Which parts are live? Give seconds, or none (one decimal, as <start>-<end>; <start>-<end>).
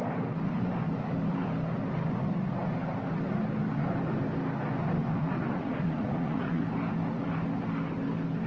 0.0-5.2; 6.6-8.5